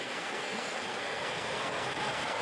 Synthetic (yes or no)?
yes